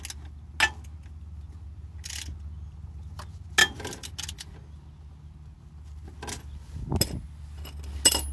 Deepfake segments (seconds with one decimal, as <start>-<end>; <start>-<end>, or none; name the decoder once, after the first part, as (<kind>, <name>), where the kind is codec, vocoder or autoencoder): none